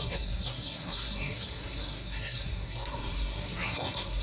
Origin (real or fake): fake